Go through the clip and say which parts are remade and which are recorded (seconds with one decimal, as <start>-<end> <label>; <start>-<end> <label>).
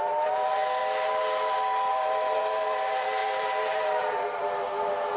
0.0-0.8 remade; 0.8-1.9 recorded; 1.9-5.2 remade